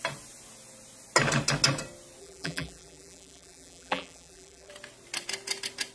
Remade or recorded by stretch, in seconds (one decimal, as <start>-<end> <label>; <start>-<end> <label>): 0.0-2.2 recorded; 2.2-4.7 remade; 4.7-5.9 recorded